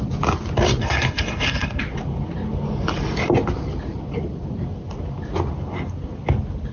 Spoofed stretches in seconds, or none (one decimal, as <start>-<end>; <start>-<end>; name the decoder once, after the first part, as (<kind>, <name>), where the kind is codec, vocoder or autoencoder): 0.8-1.8 (codec, SNAC)